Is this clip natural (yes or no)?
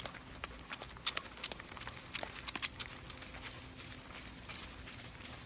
yes